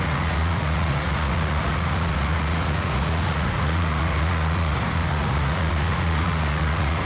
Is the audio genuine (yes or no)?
no